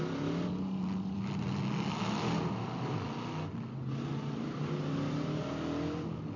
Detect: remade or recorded recorded